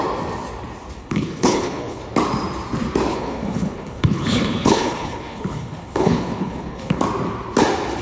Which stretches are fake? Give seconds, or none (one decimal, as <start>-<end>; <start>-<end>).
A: 1.0-2.0; 3.1-7.0